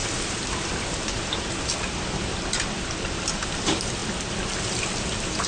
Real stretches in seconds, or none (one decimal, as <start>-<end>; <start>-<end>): none